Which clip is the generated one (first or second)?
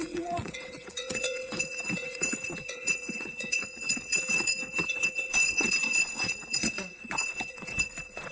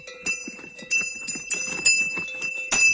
first